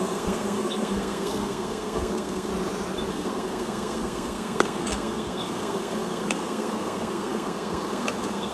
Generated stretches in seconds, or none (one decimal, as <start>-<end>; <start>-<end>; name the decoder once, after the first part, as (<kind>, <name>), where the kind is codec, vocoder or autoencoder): 0.0-2.5 (codec, SNAC); 3.1-8.5